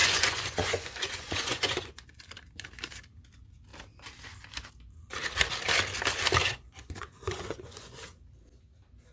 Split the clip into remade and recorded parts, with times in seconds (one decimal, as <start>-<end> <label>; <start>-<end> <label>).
0.0-2.2 remade; 2.2-6.4 recorded; 6.4-8.0 remade; 8.0-9.1 recorded